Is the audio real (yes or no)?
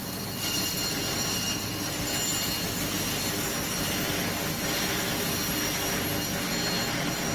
yes